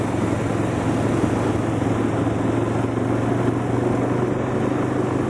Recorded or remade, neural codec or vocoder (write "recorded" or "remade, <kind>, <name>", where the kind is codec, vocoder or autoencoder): recorded